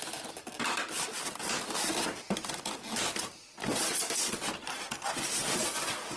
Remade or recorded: recorded